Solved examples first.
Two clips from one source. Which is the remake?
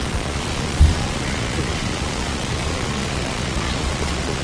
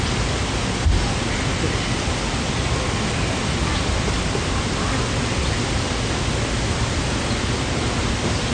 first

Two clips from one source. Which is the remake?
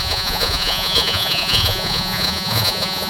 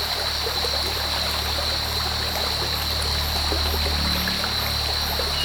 first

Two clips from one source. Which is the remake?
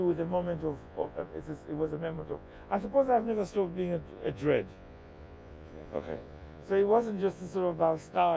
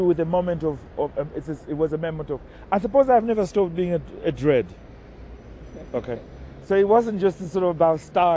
first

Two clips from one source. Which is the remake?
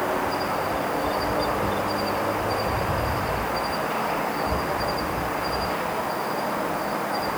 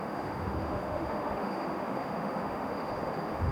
second